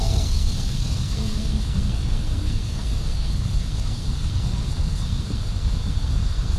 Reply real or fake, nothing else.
fake